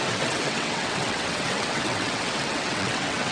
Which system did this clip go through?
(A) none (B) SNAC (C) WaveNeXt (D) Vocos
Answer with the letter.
C